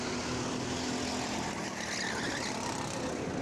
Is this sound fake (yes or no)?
no